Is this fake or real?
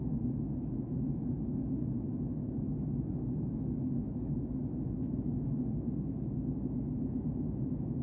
fake